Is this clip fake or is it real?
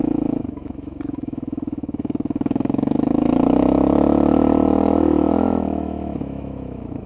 fake